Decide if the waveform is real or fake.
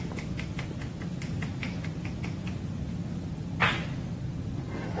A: real